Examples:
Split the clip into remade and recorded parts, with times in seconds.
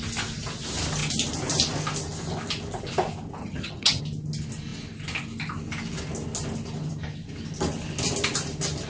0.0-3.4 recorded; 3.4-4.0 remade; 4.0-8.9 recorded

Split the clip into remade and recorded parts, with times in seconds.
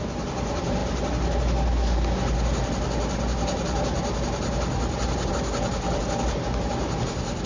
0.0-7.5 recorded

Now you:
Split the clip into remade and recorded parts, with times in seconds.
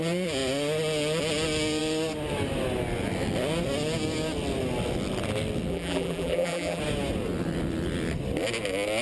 0.0-5.7 recorded; 5.7-6.8 remade; 6.8-9.0 recorded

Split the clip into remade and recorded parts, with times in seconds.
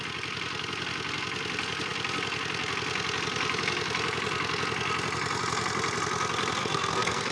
0.0-6.6 recorded; 6.6-7.3 remade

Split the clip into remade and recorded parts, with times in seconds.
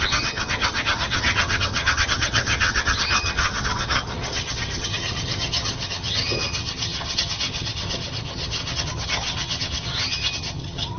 0.0-11.0 remade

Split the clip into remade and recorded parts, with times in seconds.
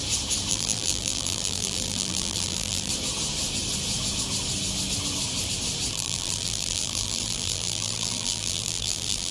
0.0-0.5 recorded; 0.5-2.9 remade; 2.9-5.9 recorded; 5.9-9.3 remade